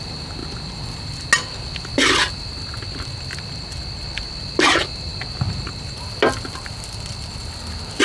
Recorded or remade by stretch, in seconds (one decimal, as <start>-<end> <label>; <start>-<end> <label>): 0.0-8.0 recorded